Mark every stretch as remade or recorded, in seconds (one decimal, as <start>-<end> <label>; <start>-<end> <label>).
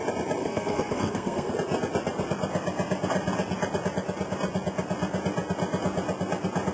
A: 0.0-0.4 recorded; 0.4-1.5 remade; 1.5-6.7 recorded